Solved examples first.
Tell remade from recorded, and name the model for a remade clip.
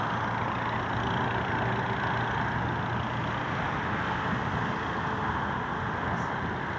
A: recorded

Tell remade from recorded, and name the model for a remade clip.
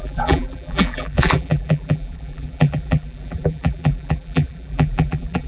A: remade, vocoder, BigVGAN v2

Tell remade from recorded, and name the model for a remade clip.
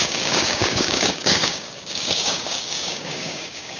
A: remade, codec, DAC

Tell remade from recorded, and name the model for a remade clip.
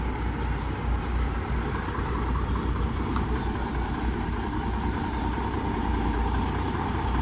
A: remade, vocoder, BigVGAN v2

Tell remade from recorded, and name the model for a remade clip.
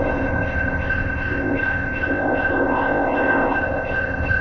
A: remade, codec, ZipCodec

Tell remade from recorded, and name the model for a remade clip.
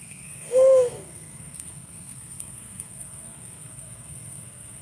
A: remade, codec, SNAC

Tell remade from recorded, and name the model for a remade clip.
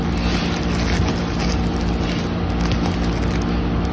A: recorded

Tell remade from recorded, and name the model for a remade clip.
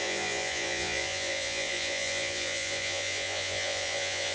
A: remade, vocoder, Vocos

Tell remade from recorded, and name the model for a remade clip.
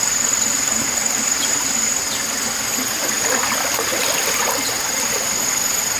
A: recorded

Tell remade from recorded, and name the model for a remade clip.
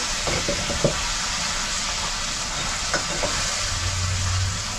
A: recorded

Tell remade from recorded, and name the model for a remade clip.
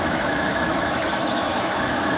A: remade, autoencoder, DAC-VAE